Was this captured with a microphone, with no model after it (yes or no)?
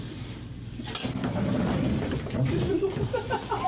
no